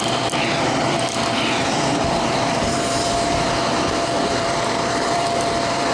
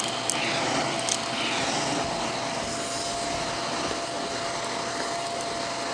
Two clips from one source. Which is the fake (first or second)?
first